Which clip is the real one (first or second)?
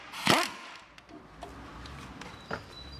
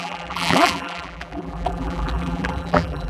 first